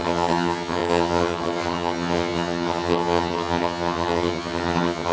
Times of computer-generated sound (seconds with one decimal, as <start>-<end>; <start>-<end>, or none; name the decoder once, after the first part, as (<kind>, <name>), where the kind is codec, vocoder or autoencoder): 0.0-5.1 (vocoder, HiFi-GAN)